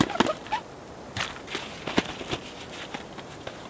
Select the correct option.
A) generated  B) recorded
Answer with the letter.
B